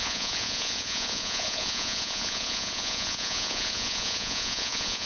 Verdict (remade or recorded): remade